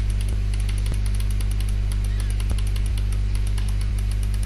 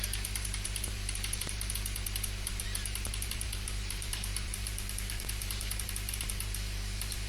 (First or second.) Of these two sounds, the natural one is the first